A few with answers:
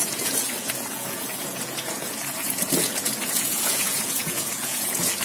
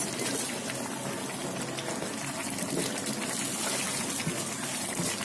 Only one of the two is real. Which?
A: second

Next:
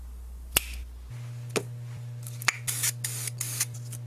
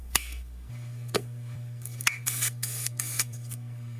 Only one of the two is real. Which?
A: first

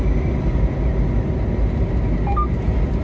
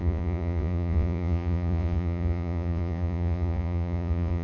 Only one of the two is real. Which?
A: first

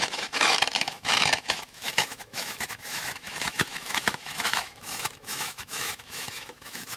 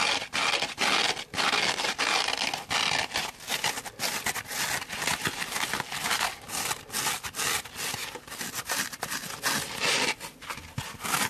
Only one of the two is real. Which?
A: second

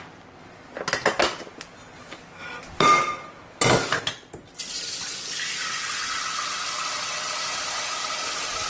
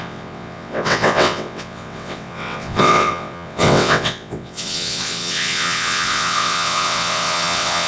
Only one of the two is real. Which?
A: first